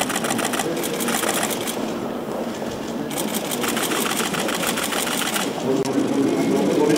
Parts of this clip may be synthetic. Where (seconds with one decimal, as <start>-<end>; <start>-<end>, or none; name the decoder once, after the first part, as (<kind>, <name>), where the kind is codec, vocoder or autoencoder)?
3.7-5.8 (vocoder, BigVGAN v2)